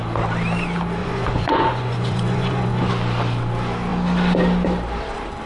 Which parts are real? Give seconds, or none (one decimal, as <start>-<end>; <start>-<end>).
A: 0.0-1.0; 2.9-5.5